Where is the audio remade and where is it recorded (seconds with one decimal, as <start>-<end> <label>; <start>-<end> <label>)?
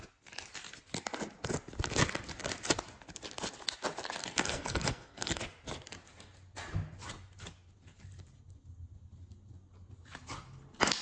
0.0-4.2 recorded; 4.2-5.4 remade; 5.4-11.0 recorded